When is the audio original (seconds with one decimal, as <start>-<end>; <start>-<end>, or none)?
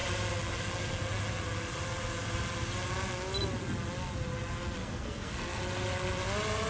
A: 0.0-4.8; 5.6-6.7